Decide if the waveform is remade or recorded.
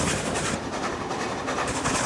recorded